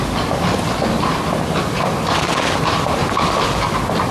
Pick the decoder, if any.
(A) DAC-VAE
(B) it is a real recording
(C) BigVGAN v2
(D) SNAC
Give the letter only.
B